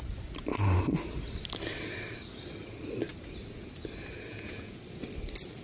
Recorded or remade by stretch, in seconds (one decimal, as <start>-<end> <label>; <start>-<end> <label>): 0.0-4.3 recorded; 4.3-4.8 remade; 4.8-5.6 recorded